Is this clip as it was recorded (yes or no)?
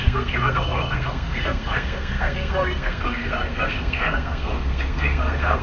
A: no